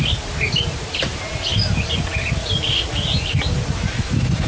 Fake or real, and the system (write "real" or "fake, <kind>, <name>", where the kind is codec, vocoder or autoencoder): real